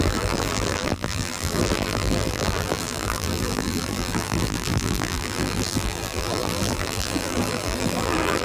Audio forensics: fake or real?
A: fake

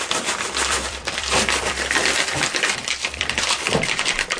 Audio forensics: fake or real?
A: fake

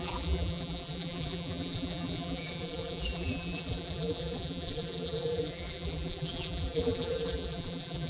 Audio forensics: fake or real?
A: fake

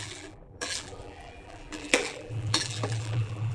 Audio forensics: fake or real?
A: fake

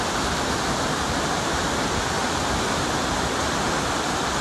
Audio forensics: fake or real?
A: fake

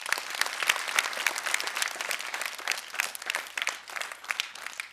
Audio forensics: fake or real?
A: real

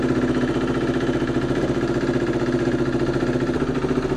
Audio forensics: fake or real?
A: real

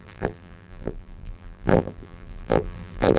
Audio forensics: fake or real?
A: fake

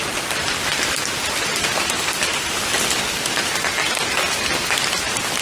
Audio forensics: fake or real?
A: real